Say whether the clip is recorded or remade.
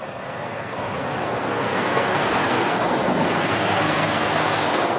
remade